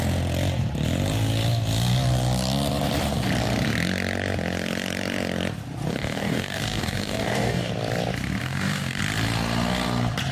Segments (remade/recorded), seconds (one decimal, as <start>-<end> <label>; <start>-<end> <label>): 0.0-5.9 recorded; 5.9-7.7 remade; 7.7-8.4 recorded; 8.4-9.0 remade; 9.0-10.3 recorded